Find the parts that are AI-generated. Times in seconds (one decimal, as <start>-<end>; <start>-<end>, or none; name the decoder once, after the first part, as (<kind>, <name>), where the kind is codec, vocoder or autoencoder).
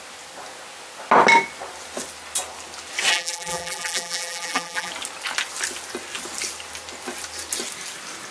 3.1-4.9 (vocoder, BigVGAN v2)